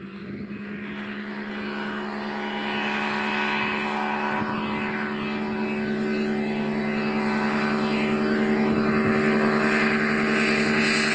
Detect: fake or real real